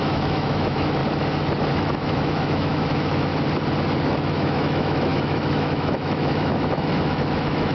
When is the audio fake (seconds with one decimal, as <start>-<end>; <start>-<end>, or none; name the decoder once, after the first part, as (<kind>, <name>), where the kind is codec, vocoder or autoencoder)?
0.0-1.0 (autoencoder, DAC-VAE); 1.7-3.3; 4.0-7.7